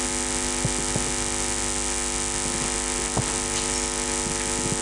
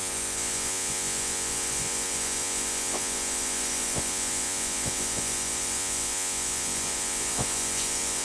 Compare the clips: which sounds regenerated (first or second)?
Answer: second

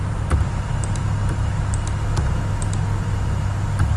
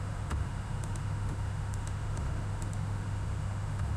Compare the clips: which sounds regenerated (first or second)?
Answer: second